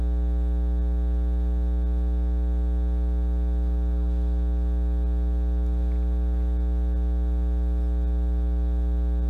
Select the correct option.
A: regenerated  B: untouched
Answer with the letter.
B